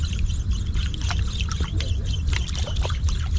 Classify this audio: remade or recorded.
recorded